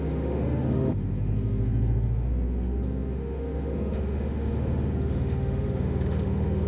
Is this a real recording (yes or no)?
no